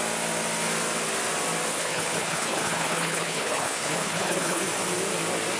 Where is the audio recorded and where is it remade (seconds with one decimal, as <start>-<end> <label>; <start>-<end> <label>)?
0.0-1.7 recorded; 1.7-4.6 remade; 4.6-5.6 recorded